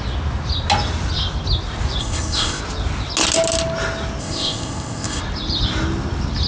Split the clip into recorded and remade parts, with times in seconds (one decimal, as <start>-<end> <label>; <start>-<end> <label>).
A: 0.0-2.0 recorded; 2.0-2.6 remade; 2.6-4.2 recorded; 4.2-5.2 remade; 5.2-6.5 recorded